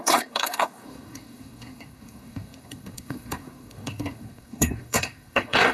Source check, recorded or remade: remade